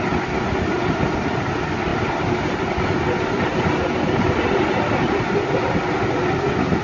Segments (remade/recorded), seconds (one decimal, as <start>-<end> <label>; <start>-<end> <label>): 0.0-6.8 recorded